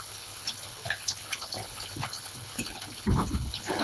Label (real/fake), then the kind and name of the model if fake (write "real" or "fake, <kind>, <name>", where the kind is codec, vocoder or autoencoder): fake, codec, HILCodec